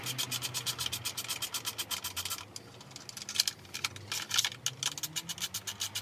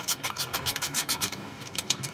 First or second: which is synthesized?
second